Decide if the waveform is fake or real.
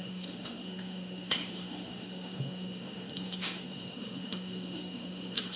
fake